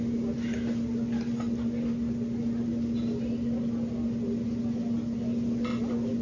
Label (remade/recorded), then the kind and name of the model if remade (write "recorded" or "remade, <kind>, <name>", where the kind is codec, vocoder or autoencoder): recorded